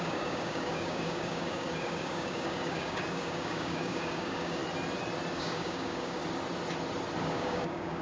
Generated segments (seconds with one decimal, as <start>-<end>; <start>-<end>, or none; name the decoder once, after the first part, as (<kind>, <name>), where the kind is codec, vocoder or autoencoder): 0.0-4.6 (codec, DAC); 5.3-6.2; 7.2-8.0